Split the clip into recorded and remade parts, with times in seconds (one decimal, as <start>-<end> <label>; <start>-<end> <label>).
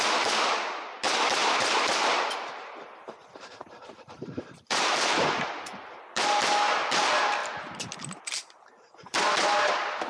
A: 0.0-1.4 recorded; 1.4-5.5 remade; 5.5-10.1 recorded